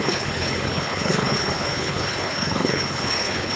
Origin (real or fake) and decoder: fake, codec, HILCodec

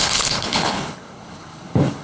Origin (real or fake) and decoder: fake, codec, HILCodec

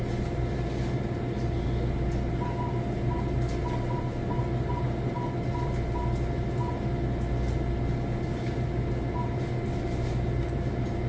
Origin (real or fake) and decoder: real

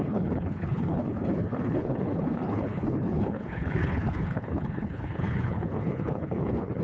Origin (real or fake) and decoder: fake, codec, HILCodec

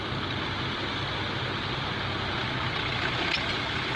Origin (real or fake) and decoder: real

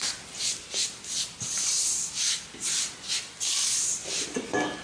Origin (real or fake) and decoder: real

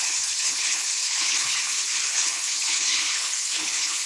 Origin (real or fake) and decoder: fake, codec, HILCodec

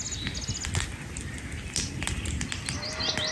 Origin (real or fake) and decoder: real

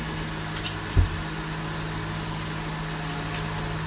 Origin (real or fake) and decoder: real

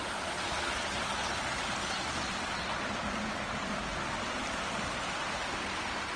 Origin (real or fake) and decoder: real